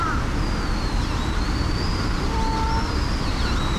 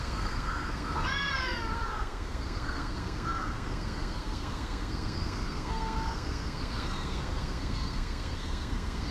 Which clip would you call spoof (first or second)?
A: second